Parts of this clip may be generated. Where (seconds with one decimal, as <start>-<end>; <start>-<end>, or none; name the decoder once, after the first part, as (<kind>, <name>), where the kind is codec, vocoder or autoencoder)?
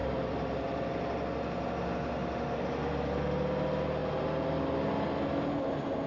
none